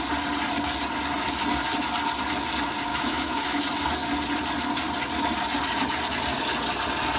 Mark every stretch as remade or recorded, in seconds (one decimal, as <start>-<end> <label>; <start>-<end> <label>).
0.0-2.9 recorded; 2.9-3.6 remade; 3.6-7.2 recorded